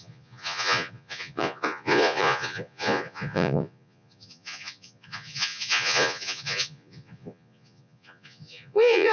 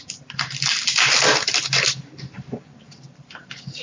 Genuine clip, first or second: second